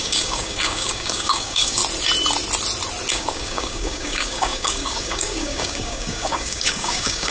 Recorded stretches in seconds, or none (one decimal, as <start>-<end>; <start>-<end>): 1.8-3.1

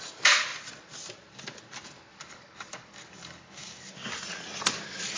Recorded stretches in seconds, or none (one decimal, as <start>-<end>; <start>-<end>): 0.0-2.1; 3.9-5.2

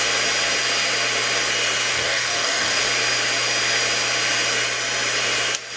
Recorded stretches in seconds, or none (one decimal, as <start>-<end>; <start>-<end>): 0.0-1.9; 2.8-5.8

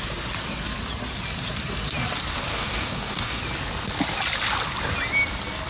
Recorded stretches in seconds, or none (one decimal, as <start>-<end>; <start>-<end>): 0.0-2.5; 3.4-5.7

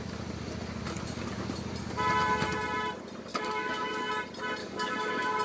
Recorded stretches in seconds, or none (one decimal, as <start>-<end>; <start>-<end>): 0.0-3.3; 4.1-4.6

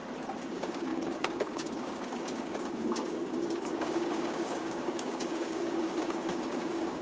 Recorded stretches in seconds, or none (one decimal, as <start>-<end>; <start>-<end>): 0.0-0.5